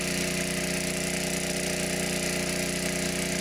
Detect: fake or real real